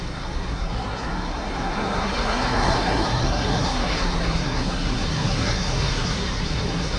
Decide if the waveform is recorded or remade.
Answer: remade